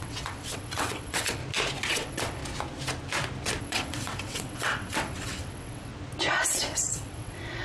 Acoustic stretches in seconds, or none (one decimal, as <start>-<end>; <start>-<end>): 1.4-1.9; 2.4-3.6; 5.9-6.5